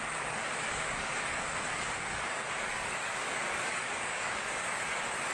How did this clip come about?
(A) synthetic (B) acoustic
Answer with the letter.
A